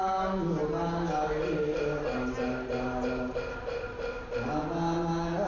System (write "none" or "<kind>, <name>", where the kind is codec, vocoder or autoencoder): none